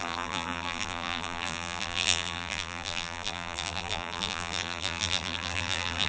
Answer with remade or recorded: remade